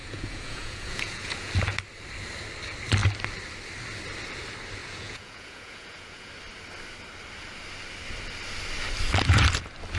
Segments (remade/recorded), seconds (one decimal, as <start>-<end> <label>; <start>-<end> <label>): 0.0-1.5 remade; 1.5-4.8 recorded; 4.8-6.3 remade; 6.3-10.0 recorded